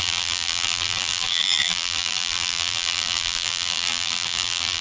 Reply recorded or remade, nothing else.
remade